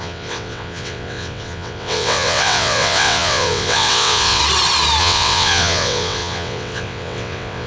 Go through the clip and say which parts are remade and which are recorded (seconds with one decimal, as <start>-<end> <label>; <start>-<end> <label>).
0.0-4.4 remade; 4.4-5.0 recorded; 5.0-7.7 remade